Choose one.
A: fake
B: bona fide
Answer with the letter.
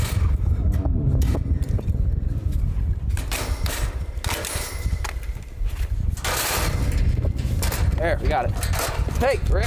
B